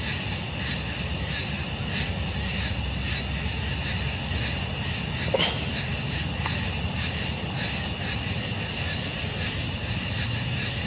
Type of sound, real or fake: real